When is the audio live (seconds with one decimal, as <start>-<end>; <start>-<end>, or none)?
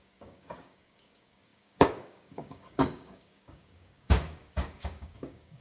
none